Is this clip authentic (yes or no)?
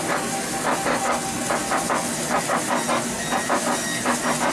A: yes